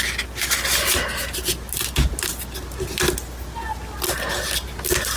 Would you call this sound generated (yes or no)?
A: no